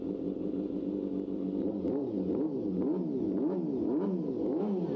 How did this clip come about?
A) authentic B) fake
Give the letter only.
A